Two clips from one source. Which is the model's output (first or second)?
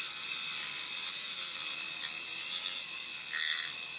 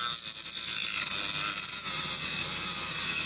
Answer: first